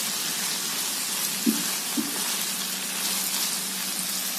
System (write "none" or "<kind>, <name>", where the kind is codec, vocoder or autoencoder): none